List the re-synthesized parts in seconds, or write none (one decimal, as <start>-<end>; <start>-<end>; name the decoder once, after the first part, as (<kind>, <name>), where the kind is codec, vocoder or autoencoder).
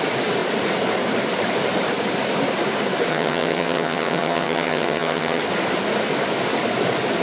3.1-5.4 (vocoder, HiFi-GAN)